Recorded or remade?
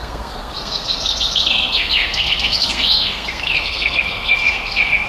remade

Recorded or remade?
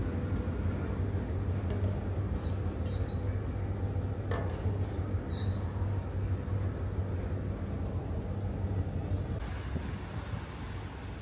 recorded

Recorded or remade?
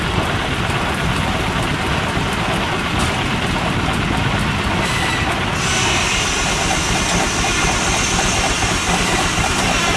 recorded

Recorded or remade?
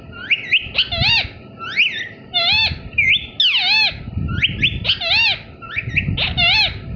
recorded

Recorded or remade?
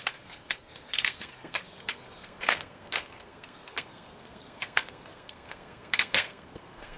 remade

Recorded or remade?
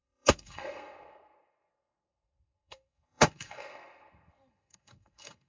remade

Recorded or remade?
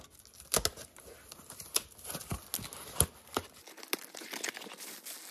recorded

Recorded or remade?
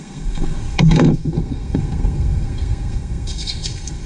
remade